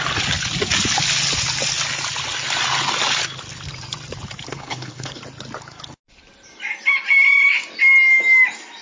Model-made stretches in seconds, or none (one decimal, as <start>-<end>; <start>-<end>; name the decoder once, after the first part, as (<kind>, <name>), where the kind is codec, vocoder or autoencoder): 4.5-5.2 (codec, HILCodec)